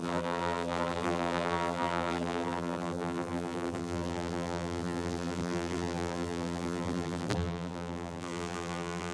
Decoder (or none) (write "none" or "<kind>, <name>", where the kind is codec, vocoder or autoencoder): vocoder, BigVGAN v2